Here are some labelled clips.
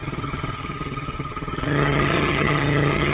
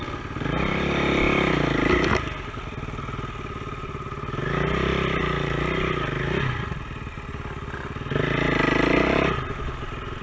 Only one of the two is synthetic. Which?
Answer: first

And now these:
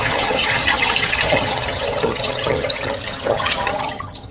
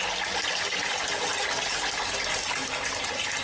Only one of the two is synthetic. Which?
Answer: first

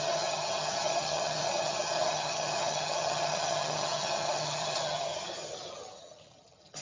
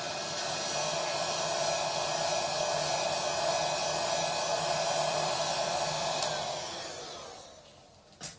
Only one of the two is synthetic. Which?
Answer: first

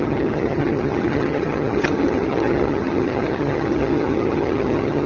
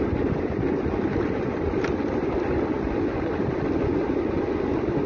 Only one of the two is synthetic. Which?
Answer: first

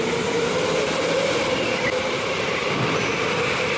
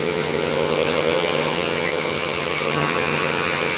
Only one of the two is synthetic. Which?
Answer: second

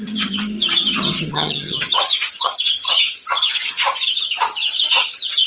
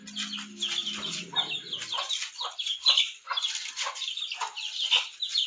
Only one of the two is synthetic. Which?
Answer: first